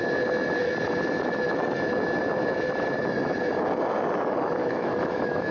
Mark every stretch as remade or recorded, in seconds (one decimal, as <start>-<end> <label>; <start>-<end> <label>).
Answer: 0.0-4.6 recorded; 4.6-5.5 remade